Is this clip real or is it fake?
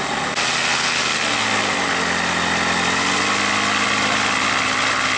real